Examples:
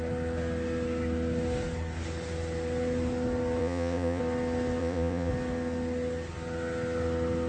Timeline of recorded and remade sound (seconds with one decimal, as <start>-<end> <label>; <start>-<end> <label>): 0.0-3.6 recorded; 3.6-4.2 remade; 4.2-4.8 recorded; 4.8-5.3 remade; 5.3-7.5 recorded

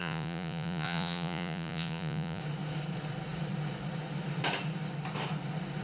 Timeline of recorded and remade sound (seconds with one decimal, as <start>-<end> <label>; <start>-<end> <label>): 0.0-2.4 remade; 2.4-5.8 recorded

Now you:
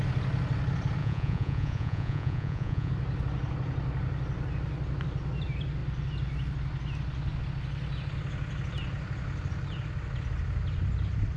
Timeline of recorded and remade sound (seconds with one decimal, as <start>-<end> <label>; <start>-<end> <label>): 0.0-1.0 recorded; 1.0-2.9 remade; 2.9-11.4 recorded